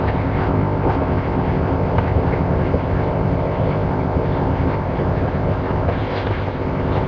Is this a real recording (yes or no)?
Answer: no